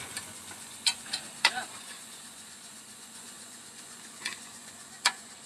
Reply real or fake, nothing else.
fake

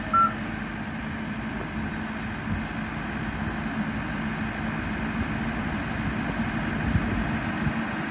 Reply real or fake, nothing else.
real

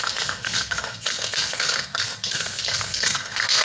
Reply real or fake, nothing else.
fake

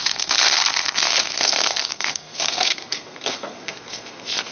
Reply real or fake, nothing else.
fake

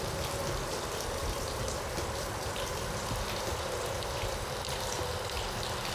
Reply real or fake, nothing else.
fake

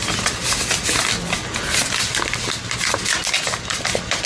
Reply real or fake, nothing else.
real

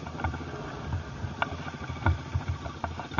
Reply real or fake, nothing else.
real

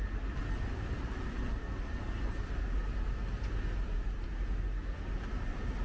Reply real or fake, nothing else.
real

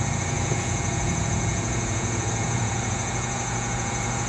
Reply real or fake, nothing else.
fake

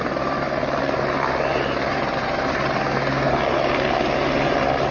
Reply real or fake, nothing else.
real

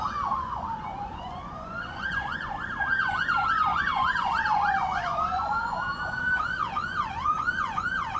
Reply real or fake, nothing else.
fake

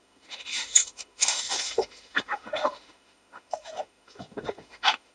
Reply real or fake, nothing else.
fake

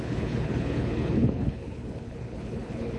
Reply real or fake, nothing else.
fake